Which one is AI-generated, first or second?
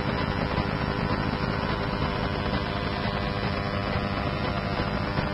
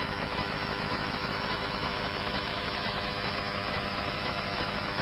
second